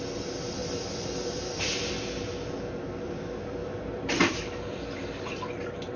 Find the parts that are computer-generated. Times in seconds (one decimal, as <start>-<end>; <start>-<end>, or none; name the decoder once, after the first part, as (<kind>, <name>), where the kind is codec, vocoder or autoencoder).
0.6-1.9 (vocoder, BigVGAN v2); 3.6-4.8